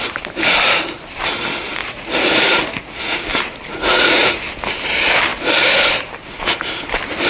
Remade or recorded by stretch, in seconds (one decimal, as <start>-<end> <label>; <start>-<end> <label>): 0.0-1.8 recorded; 1.8-3.0 remade; 3.0-3.7 recorded; 3.7-4.4 remade; 4.4-7.3 recorded